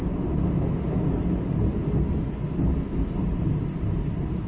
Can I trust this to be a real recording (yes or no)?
yes